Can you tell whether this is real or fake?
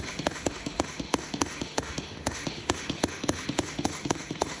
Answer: fake